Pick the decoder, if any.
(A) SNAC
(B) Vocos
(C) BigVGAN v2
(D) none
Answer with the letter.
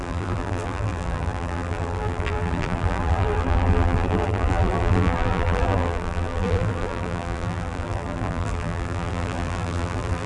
C